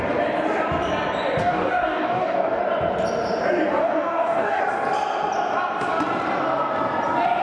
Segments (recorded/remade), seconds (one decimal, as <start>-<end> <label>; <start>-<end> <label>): 0.0-1.4 recorded; 1.4-2.6 remade; 2.6-3.8 recorded; 3.8-4.6 remade; 4.6-7.4 recorded